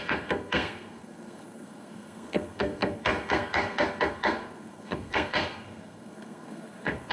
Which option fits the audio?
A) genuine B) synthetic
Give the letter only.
B